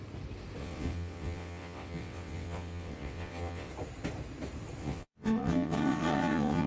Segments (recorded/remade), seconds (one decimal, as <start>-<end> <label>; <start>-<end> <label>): 0.0-0.6 recorded; 0.6-3.7 remade; 3.7-4.8 recorded; 4.8-6.7 remade